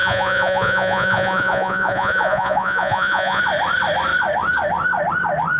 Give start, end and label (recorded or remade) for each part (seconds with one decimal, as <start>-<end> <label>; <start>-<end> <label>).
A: 0.0-3.4 remade; 3.4-5.6 recorded